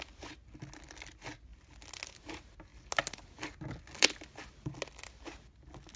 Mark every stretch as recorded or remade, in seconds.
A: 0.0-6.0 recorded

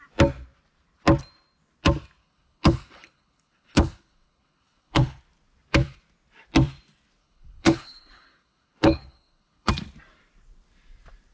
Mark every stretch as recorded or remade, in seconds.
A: 0.0-2.2 recorded; 2.2-5.2 remade; 5.2-7.2 recorded; 7.2-9.7 remade; 9.7-11.3 recorded

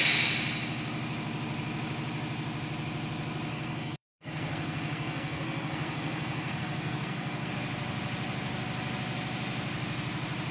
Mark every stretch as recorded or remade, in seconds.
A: 0.0-3.5 recorded; 3.5-7.5 remade; 7.5-10.5 recorded

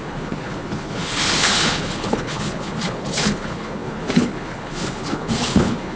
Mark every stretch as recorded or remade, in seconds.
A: 0.0-6.0 remade

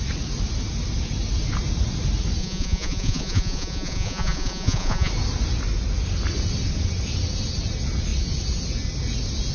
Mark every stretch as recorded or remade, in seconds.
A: 0.0-2.4 recorded; 2.4-5.1 remade; 5.1-9.5 recorded

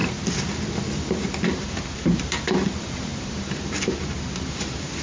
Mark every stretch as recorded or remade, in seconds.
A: 0.0-1.4 recorded; 1.4-5.0 remade

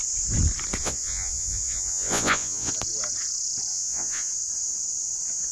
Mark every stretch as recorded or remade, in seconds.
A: 0.0-0.8 recorded; 0.8-2.7 remade; 2.7-3.7 recorded; 3.7-4.3 remade; 4.3-5.5 recorded